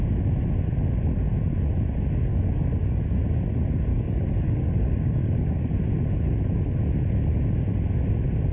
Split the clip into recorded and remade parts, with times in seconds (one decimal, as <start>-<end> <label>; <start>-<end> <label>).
0.0-2.3 recorded; 2.3-3.2 remade; 3.2-3.9 recorded; 3.9-5.7 remade; 5.7-8.5 recorded